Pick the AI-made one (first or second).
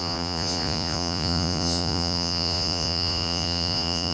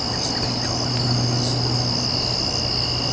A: first